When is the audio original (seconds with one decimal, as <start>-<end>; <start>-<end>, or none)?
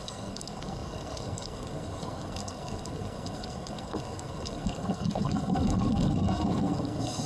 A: none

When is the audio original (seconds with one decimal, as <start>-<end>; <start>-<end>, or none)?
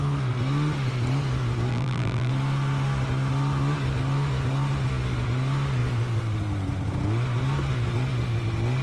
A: 0.0-1.7; 2.3-8.8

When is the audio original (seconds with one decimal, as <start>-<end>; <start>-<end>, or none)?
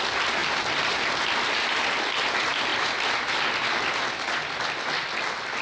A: 0.0-5.6